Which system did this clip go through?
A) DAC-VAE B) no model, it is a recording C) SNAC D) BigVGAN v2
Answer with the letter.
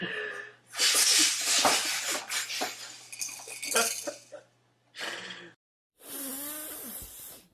B